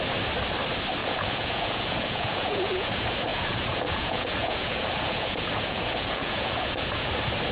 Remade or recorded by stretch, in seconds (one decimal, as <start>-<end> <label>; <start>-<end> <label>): 0.0-1.0 recorded; 1.0-2.9 remade; 2.9-3.3 recorded; 3.3-7.1 remade; 7.1-7.5 recorded